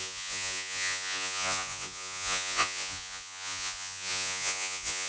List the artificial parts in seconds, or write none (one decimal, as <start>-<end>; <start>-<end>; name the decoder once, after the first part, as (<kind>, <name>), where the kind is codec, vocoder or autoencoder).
0.0-5.1 (vocoder, Vocos)